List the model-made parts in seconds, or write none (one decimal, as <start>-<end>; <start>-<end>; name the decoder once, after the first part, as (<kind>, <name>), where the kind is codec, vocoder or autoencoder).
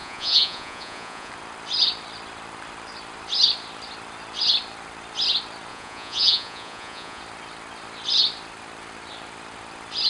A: 0.0-1.3 (vocoder, Vocos); 5.7-7.2